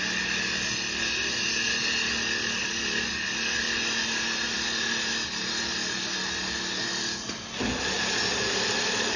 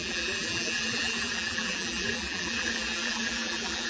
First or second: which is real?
first